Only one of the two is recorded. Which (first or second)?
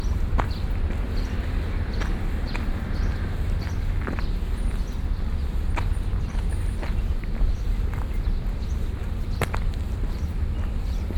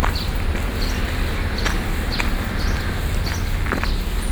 second